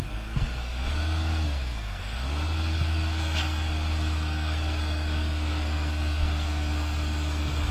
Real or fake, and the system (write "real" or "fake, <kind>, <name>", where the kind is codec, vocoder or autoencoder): fake, codec, SNAC